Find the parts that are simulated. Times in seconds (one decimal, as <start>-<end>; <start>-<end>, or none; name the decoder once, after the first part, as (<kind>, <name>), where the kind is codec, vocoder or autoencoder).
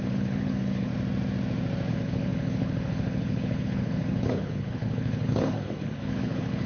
0.0-0.9 (codec, HILCodec); 1.9-6.7